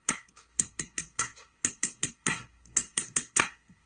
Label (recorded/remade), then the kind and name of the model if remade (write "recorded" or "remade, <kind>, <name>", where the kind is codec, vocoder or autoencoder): remade, codec, SNAC